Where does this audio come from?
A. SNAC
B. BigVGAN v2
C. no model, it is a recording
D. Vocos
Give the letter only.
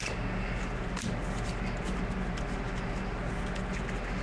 C